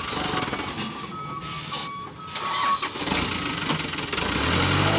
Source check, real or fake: real